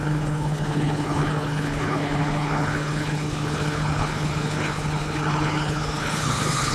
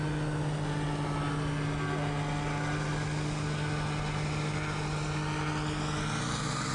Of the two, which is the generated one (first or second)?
first